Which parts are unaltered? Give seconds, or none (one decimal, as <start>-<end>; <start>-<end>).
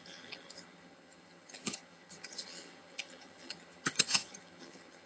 none